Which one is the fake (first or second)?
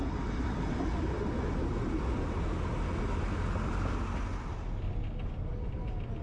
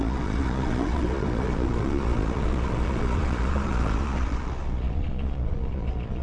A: second